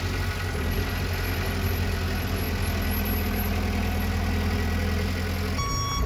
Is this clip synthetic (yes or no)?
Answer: no